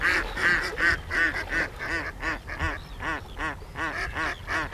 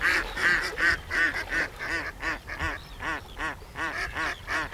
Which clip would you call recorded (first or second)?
first